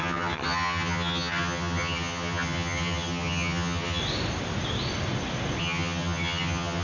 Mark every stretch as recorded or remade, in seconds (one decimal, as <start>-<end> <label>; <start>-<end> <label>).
0.0-4.0 remade; 4.0-5.6 recorded; 5.6-6.8 remade